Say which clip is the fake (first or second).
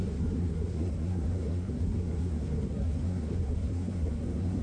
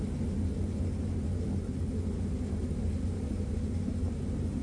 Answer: first